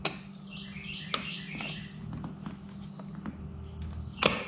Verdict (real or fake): real